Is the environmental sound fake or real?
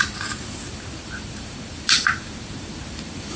fake